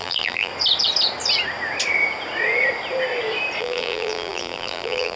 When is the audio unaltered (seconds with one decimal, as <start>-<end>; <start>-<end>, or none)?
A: 0.5-3.6